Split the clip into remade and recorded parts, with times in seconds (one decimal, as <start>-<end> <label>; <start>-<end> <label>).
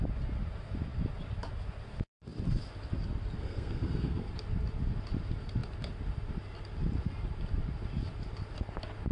0.0-3.4 recorded; 3.4-4.3 remade; 4.3-9.1 recorded